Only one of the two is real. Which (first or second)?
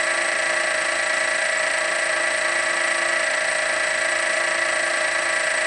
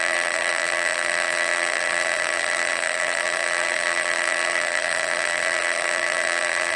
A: first